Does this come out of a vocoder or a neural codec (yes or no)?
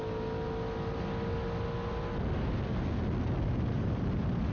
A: no